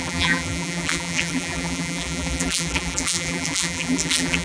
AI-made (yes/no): yes